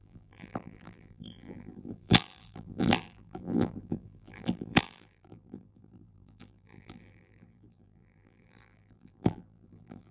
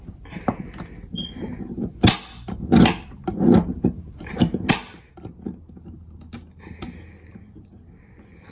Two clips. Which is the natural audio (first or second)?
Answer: second